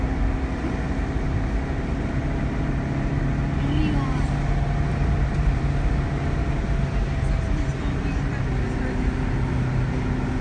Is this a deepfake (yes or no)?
no